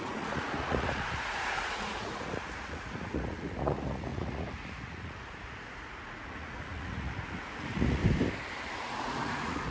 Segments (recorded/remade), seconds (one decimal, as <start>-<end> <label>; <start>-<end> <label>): 0.0-8.0 remade; 8.0-8.7 recorded; 8.7-9.7 remade